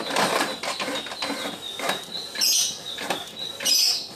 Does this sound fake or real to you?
real